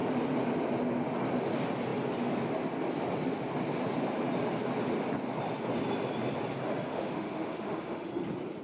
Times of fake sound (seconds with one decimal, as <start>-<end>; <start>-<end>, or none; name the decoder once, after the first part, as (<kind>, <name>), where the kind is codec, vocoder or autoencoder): 6.9-8.1 (autoencoder, DAC-VAE)